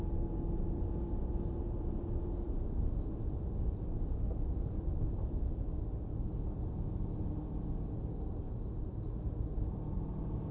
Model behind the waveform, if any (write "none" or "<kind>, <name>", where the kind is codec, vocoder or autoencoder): none